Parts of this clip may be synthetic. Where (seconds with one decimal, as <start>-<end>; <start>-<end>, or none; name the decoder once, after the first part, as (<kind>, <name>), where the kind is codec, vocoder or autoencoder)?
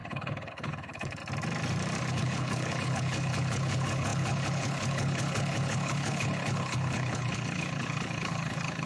0.0-1.2 (codec, HILCodec); 2.1-8.9